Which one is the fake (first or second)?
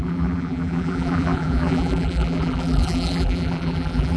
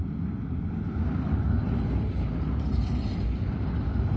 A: first